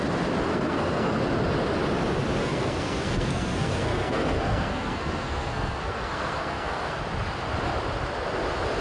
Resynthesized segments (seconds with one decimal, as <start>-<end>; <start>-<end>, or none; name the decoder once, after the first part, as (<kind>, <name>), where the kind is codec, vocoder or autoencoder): 0.5-1.1 (codec, SNAC); 2.4-7.0